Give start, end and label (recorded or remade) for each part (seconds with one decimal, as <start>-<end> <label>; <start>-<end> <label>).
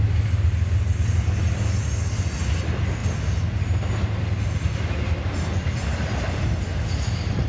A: 0.0-7.5 recorded